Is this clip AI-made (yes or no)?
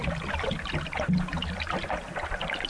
no